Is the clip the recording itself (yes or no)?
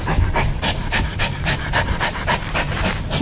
no